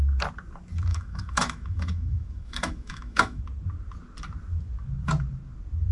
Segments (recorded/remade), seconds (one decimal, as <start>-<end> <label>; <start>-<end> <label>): 0.0-0.9 recorded; 0.9-3.4 remade; 3.4-5.9 recorded

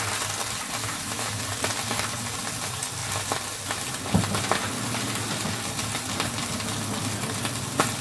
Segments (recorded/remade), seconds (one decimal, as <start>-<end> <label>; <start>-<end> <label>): 0.0-0.8 recorded; 0.8-1.4 remade; 1.4-8.0 recorded

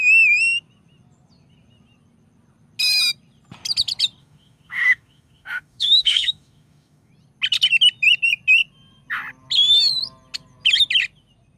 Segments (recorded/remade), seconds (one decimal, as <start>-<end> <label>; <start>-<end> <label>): 0.0-4.2 recorded; 4.2-7.1 remade; 7.1-11.6 recorded